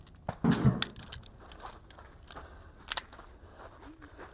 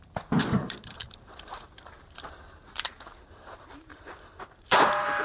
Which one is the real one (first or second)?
first